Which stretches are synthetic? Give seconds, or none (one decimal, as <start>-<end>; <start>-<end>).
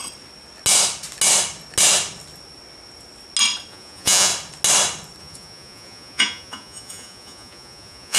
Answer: 3.7-4.3; 5.2-8.2